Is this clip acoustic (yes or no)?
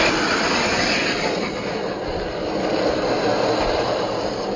yes